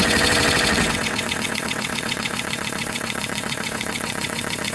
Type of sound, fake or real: fake